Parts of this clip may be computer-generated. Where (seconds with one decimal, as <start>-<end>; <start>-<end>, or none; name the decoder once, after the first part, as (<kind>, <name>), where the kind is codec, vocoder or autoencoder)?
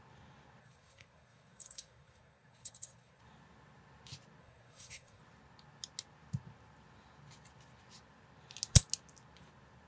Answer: 0.6-3.2 (codec, SNAC); 4.4-5.2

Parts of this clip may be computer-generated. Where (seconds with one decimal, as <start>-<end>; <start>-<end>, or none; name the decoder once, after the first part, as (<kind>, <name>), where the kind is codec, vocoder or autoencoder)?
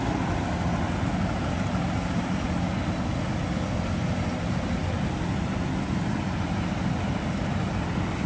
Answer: none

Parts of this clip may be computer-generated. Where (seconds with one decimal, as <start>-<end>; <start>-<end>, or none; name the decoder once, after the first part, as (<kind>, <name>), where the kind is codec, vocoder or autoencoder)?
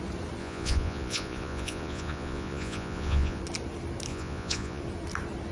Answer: 0.4-3.4 (vocoder, Vocos); 4.1-4.8